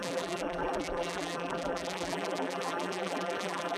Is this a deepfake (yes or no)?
yes